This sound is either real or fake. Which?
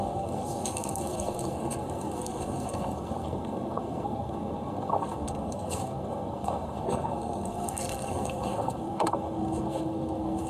fake